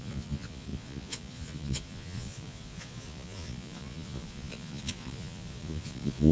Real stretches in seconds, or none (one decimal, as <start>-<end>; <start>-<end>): none